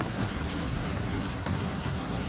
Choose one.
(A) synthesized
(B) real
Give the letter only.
A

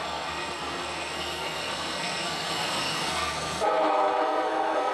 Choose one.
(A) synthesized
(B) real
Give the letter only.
A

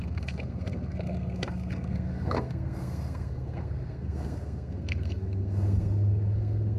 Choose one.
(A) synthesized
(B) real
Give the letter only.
A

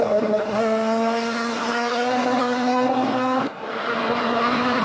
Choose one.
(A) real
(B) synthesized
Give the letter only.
B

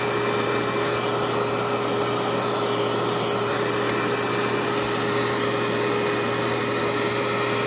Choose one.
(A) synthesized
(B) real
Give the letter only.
B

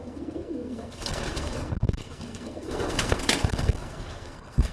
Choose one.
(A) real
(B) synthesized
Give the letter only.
B